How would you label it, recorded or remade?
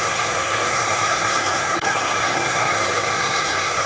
remade